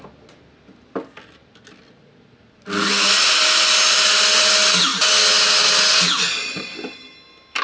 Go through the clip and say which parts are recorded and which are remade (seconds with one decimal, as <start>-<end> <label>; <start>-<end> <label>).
0.0-7.6 recorded